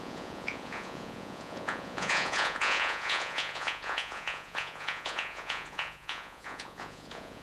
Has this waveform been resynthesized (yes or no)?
yes